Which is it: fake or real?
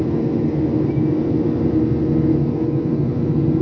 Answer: real